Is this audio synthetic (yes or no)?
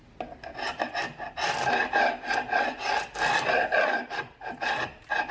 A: no